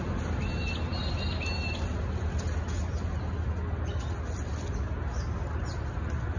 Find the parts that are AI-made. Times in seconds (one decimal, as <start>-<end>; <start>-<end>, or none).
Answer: none